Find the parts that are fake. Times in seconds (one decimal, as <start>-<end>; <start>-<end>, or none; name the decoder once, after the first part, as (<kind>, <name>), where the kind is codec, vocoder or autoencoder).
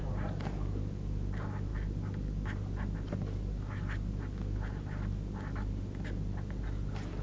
none